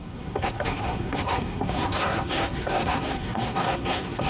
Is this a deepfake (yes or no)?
yes